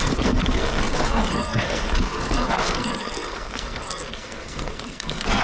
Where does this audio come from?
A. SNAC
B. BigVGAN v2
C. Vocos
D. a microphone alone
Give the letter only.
A